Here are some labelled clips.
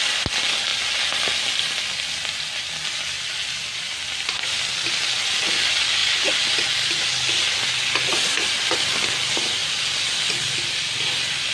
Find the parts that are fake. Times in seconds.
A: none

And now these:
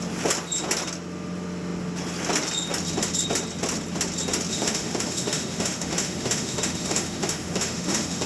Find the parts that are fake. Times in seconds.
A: 4.5-8.3 (autoencoder, DAC-VAE)

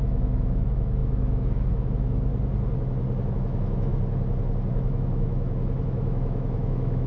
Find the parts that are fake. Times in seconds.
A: 0.0-2.3 (autoencoder, DAC-VAE); 3.3-3.9; 4.7-7.1